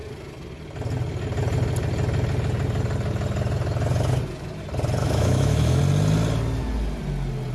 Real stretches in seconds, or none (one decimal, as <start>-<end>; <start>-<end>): 0.0-5.0; 5.8-7.5